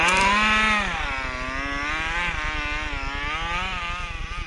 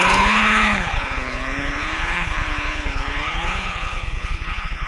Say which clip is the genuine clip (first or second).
first